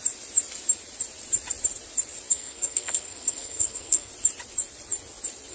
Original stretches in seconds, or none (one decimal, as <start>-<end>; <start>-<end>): 0.0-2.3; 4.1-5.5